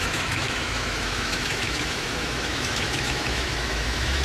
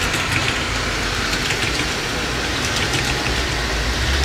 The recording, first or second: second